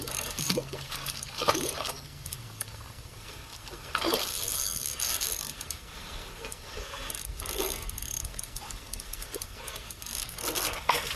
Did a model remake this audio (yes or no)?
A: yes